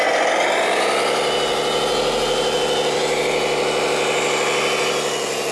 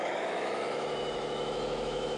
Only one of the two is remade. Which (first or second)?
second